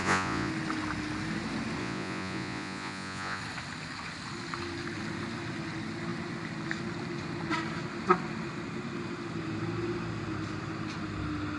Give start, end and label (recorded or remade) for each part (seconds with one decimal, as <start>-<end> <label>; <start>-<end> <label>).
0.0-0.5 remade; 0.5-1.8 recorded; 1.8-3.4 remade; 3.4-11.6 recorded